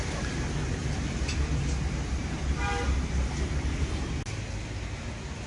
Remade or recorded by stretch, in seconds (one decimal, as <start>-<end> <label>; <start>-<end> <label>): 0.0-0.8 recorded; 0.8-4.1 remade; 4.1-5.5 recorded